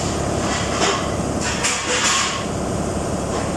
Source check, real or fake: real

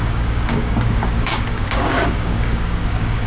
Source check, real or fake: fake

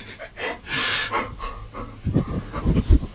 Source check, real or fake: real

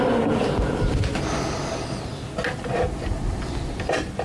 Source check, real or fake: real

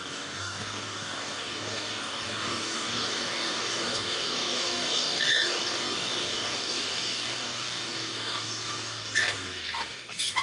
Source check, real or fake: fake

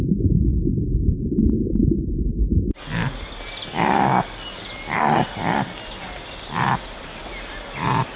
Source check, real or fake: real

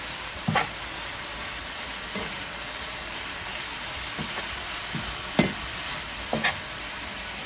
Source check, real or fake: real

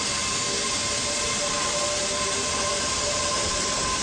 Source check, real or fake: real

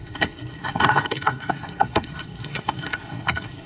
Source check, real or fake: fake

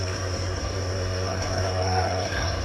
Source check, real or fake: fake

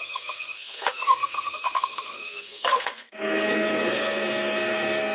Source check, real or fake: fake